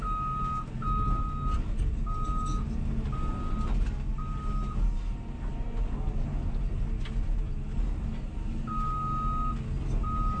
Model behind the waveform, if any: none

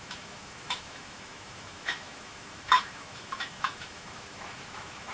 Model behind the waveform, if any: autoencoder, DAC-VAE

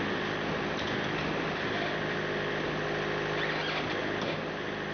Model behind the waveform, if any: none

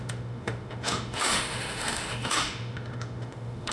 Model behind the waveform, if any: autoencoder, DAC-VAE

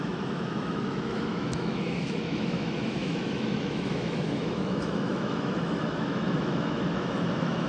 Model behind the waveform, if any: autoencoder, DAC-VAE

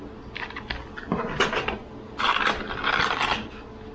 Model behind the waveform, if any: none